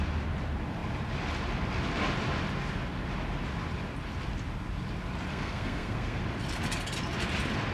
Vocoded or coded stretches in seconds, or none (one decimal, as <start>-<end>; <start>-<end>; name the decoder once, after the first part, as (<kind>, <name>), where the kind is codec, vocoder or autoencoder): 5.3-6.2 (codec, SNAC)